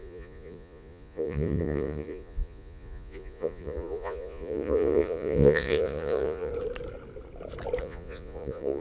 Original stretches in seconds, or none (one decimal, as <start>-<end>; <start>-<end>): 6.5-7.8